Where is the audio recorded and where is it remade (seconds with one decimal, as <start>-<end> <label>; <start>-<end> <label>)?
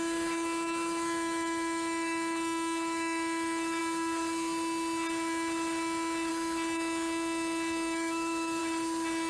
0.0-3.8 remade; 3.8-6.3 recorded; 6.3-8.6 remade; 8.6-9.3 recorded